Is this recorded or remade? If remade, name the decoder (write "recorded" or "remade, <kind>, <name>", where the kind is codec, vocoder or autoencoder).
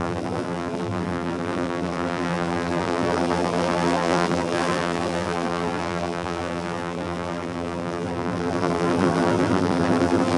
remade, vocoder, BigVGAN v2